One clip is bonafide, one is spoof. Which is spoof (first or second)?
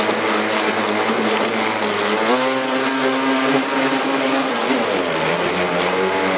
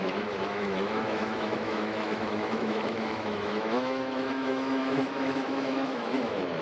second